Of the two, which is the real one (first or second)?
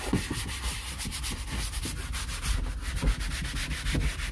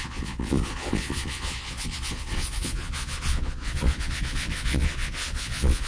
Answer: first